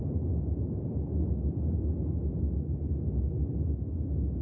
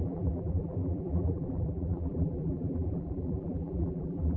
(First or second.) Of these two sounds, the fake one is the second